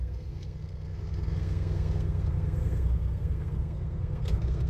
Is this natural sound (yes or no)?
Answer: no